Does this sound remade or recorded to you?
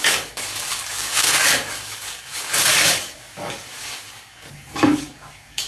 remade